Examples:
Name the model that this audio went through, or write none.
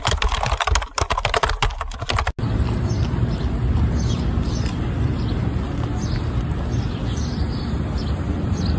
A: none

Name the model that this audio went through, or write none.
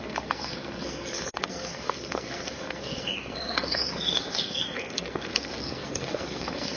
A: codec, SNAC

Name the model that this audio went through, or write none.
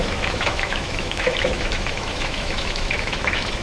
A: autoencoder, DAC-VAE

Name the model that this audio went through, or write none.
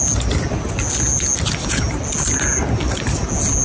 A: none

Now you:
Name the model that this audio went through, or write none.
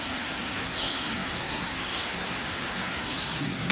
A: codec, SNAC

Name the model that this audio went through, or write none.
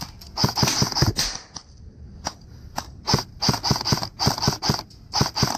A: none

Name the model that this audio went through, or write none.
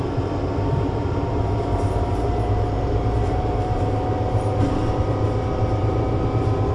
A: vocoder, BigVGAN v2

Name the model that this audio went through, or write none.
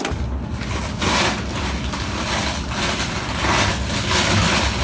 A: none